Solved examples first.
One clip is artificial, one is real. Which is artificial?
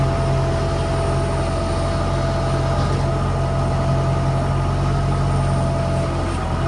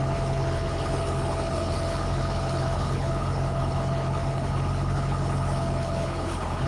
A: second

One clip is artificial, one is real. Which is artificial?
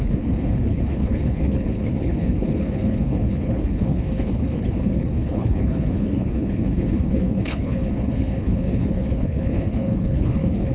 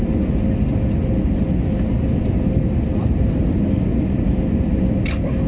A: first